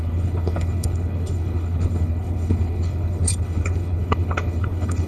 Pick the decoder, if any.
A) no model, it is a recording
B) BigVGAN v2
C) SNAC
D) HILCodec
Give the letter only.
D